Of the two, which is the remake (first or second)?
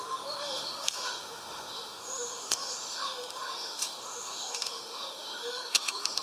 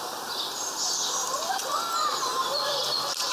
first